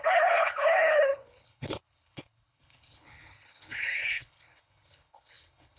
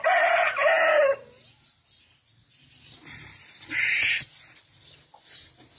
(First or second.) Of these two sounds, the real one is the second